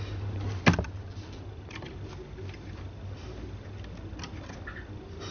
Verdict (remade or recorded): recorded